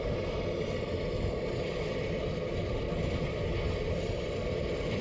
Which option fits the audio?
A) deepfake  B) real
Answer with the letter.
B